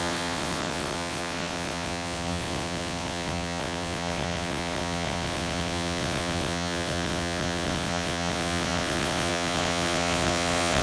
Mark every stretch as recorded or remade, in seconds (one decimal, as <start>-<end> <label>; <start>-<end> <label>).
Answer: 0.0-10.8 remade